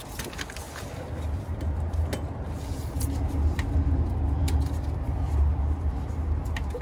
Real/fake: real